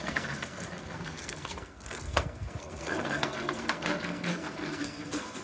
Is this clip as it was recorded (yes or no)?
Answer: no